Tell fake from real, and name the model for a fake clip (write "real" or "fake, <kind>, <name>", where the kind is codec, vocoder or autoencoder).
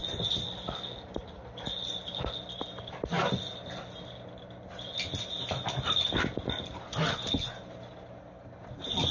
real